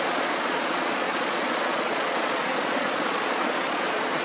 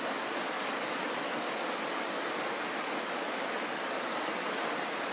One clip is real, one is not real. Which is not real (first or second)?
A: first